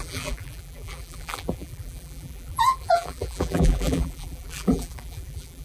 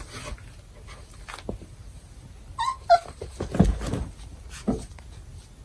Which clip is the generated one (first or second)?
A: first